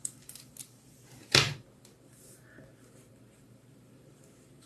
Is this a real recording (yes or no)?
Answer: no